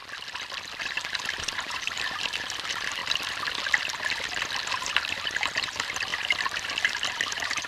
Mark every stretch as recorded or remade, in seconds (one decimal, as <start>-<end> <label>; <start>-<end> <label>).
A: 0.0-0.8 recorded; 0.8-3.0 remade; 3.0-4.7 recorded; 4.7-7.7 remade